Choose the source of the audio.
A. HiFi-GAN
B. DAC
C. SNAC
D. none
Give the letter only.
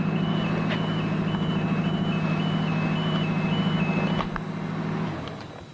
D